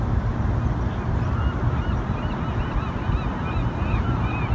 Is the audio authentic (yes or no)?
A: yes